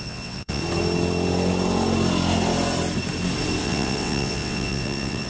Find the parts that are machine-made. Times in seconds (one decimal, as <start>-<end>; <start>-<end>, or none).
0.0-0.6; 3.6-5.3